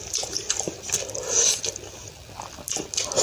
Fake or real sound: real